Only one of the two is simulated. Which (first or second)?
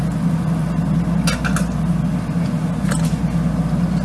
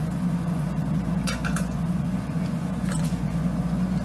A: second